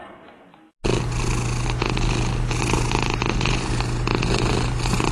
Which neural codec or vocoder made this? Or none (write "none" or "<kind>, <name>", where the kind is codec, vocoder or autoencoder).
none